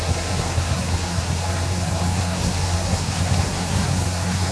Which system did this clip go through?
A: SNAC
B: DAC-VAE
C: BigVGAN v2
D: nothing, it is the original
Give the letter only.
A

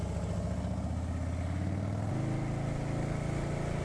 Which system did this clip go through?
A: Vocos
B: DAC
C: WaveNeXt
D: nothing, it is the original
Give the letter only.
D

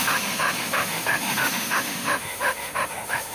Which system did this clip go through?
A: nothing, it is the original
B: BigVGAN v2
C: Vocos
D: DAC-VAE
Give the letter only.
D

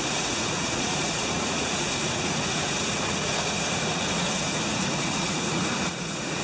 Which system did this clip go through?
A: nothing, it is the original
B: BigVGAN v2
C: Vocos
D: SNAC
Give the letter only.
C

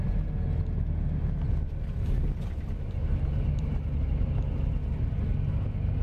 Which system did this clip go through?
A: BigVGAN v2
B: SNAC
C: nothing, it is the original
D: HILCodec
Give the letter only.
C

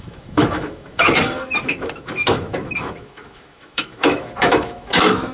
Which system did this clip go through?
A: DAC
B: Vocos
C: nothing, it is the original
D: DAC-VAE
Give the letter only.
D